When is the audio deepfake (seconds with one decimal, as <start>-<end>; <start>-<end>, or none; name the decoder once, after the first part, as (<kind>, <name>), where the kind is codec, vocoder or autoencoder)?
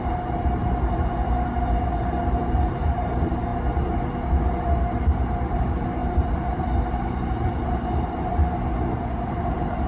0.0-3.5 (vocoder, BigVGAN v2); 4.6-8.4; 9.3-9.9